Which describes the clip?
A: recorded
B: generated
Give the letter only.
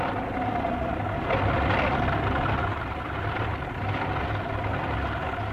A